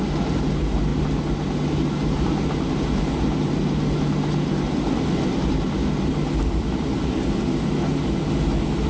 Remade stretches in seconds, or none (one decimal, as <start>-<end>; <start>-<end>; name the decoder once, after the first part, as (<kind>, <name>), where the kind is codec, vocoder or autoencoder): none